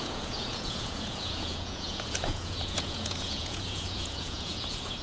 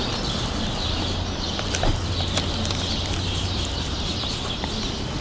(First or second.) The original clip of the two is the second